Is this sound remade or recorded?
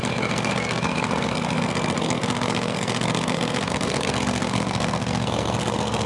remade